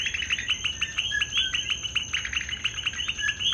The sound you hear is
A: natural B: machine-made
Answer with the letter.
A